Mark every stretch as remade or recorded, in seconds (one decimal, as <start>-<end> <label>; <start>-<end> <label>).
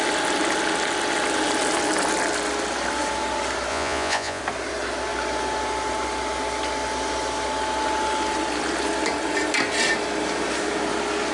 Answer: 0.0-3.7 recorded; 3.7-4.4 remade; 4.4-11.3 recorded